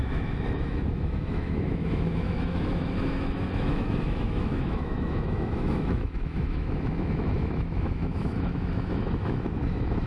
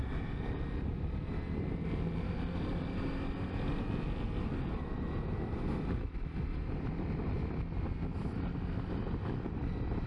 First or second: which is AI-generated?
first